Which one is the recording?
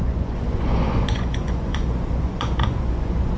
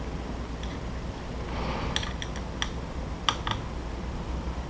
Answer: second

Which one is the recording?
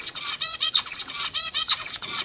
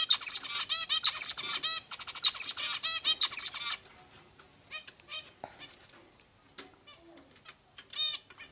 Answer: second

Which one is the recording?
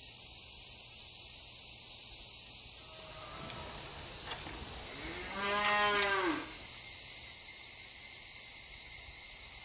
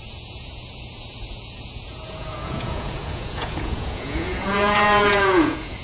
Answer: first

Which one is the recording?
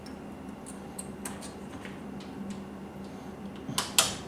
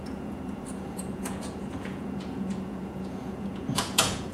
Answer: first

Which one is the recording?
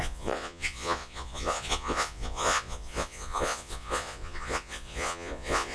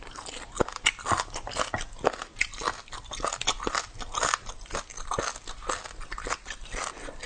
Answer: second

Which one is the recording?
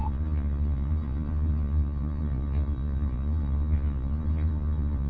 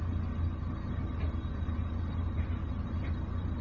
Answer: second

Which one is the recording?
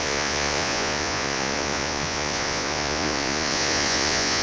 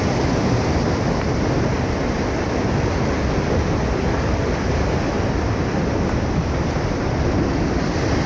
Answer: second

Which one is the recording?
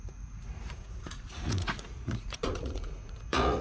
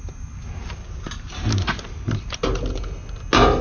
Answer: second